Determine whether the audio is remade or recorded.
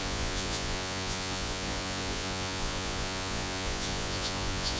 remade